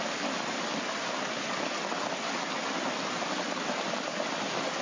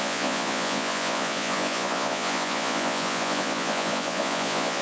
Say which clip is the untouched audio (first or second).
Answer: first